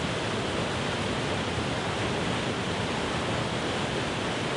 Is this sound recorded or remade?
recorded